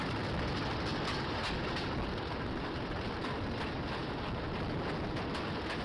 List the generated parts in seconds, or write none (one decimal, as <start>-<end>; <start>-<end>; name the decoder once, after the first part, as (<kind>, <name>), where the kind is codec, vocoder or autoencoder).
none